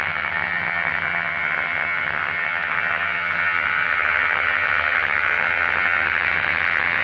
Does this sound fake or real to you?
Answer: fake